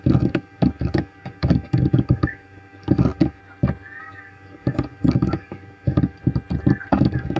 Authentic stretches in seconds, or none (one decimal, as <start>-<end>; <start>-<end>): 3.4-4.0; 6.2-6.9

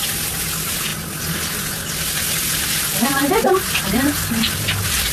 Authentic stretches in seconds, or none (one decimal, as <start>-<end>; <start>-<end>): 0.0-5.1

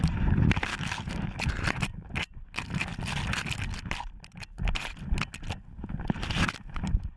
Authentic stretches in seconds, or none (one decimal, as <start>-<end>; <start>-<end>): 0.0-0.7; 1.4-7.2

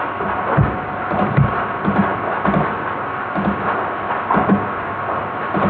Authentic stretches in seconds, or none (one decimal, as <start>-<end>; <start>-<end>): 0.0-4.4; 4.9-5.7

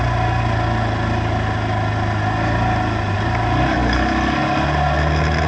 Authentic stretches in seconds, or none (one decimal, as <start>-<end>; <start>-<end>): 0.0-3.8; 4.4-5.5

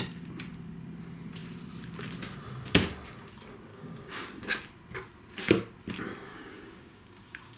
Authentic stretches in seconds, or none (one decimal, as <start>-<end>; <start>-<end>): 0.0-3.7; 4.4-6.3

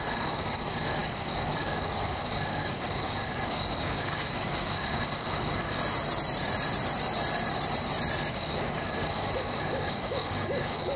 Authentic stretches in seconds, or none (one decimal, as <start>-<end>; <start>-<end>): 5.8-8.3

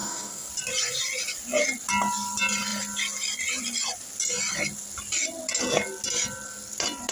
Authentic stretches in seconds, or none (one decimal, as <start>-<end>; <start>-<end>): 0.5-7.1